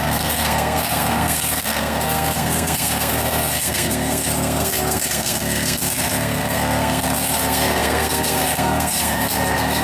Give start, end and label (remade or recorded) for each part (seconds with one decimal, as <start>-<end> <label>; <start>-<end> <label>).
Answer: 0.0-9.8 remade